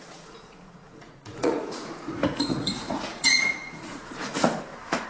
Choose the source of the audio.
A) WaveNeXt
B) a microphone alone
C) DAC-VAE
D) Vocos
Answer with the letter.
D